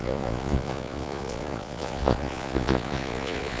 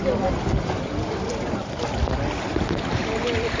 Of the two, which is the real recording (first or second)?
second